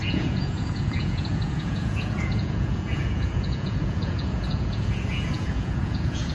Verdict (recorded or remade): remade